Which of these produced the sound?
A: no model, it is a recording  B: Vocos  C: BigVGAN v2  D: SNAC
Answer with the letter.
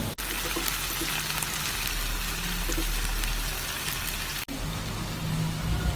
A